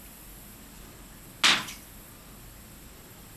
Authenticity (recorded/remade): recorded